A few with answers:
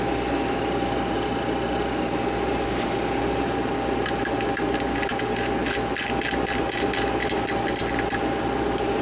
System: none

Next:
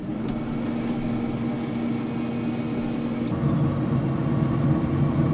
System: none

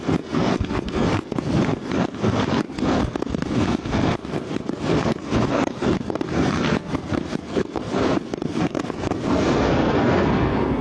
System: codec, SNAC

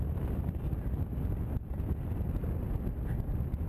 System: none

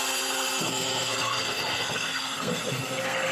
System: codec, SNAC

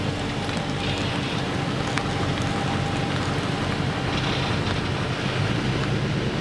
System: none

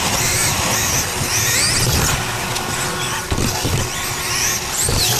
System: none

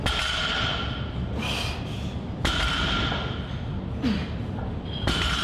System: none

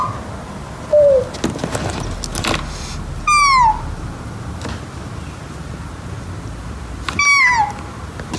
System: none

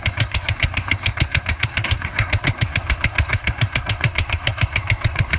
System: codec, SNAC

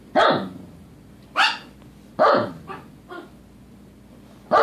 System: none